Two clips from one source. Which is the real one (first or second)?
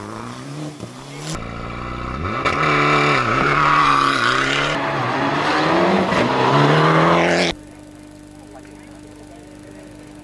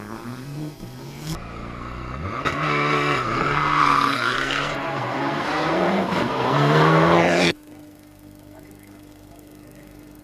first